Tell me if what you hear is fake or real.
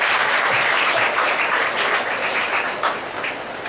fake